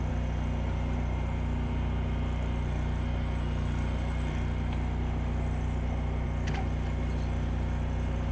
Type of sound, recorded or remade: recorded